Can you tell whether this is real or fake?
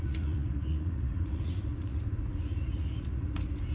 fake